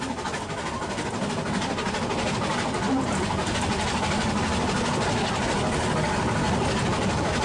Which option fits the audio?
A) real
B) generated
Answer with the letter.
A